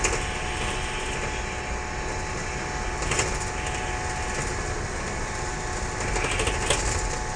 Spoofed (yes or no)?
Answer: no